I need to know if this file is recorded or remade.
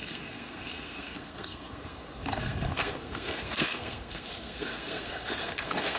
remade